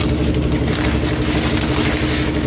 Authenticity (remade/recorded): recorded